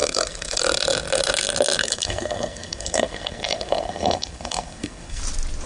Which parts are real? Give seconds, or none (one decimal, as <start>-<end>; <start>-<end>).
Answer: 0.6-1.8; 5.2-5.7